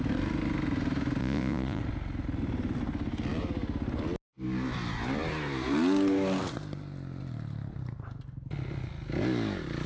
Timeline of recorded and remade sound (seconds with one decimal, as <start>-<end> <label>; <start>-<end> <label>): 0.0-1.2 recorded; 1.2-1.8 remade; 1.8-9.9 recorded

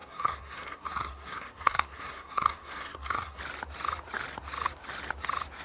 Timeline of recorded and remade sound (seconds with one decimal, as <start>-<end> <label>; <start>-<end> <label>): 0.0-3.4 remade; 3.4-5.6 recorded